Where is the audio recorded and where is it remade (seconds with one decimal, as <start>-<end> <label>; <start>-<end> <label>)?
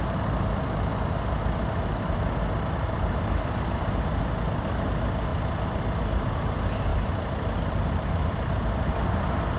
0.0-5.3 recorded; 5.3-6.0 remade; 6.0-6.9 recorded; 6.9-9.1 remade; 9.1-9.6 recorded